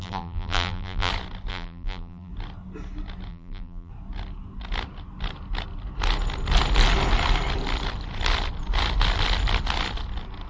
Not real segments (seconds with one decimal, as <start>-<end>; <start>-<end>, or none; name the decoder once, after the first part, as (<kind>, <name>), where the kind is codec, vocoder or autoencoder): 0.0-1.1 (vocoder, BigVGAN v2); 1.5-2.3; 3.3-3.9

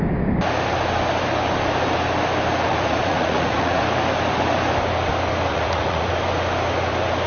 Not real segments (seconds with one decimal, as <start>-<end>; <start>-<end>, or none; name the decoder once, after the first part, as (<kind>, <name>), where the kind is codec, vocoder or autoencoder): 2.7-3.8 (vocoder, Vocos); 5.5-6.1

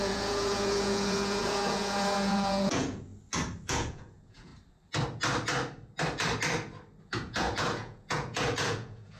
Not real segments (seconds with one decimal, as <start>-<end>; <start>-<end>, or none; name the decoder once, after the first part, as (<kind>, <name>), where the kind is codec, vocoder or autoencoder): 0.0-3.1 (vocoder, Vocos); 3.7-4.5; 7.0-9.2